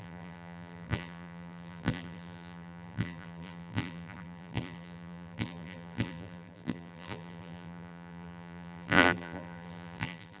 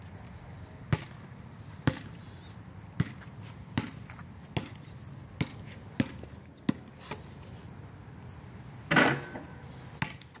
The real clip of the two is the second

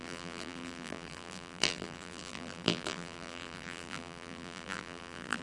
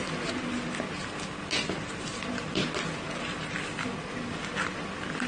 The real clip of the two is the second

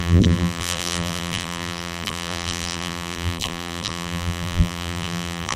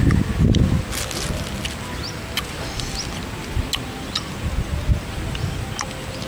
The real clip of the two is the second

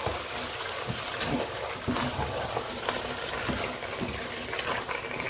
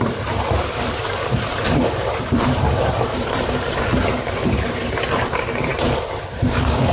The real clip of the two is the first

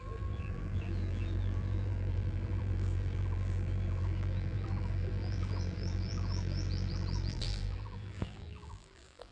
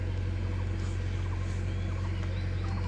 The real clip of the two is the second